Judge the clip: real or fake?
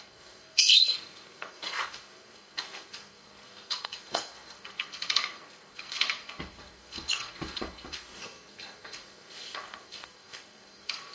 fake